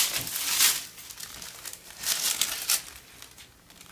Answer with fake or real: real